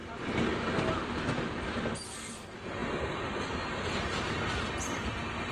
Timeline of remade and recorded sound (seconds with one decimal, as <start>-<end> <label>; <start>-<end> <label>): 0.0-5.5 recorded